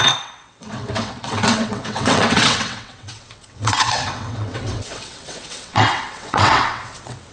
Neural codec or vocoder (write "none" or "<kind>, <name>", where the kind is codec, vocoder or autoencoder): vocoder, WaveNeXt